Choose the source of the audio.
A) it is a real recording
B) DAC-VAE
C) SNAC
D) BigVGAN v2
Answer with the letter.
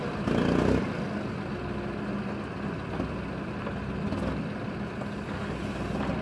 A